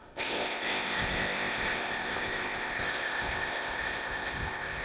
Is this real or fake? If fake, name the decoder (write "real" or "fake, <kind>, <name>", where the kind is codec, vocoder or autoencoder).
fake, codec, ZipCodec